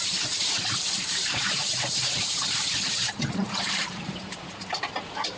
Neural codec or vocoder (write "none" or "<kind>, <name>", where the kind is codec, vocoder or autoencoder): vocoder, BigVGAN v2